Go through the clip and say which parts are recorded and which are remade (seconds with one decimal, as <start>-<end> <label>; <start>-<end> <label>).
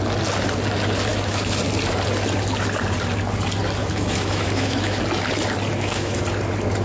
0.0-1.1 recorded; 1.1-1.6 remade; 1.6-3.8 recorded; 3.8-5.0 remade; 5.0-5.7 recorded; 5.7-6.2 remade; 6.2-6.8 recorded